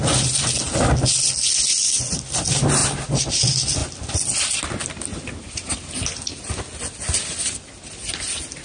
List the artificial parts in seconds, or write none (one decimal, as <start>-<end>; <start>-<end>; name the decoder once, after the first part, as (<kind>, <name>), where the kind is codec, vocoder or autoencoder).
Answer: 0.0-0.6 (vocoder, BigVGAN v2); 1.7-2.8; 3.3-3.8; 5.7-8.6